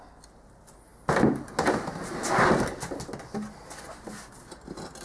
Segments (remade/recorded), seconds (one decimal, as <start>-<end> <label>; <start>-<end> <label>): 0.0-5.0 recorded